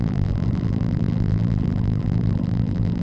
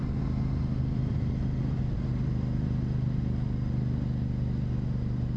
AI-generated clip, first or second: first